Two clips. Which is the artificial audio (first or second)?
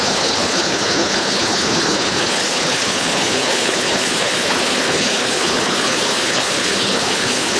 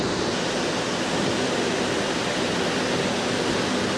first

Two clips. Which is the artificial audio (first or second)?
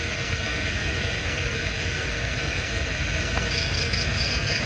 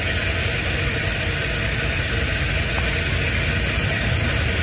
first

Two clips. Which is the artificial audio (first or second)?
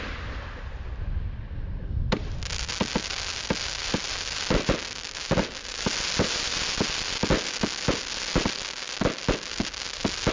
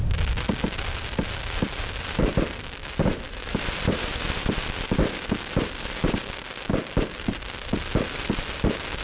second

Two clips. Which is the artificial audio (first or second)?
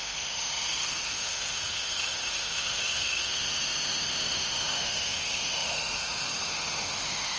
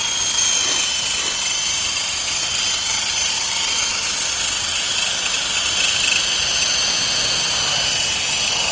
first